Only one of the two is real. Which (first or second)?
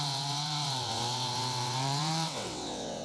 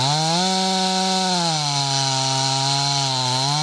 second